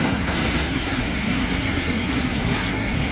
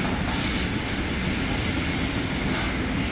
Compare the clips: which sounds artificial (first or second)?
first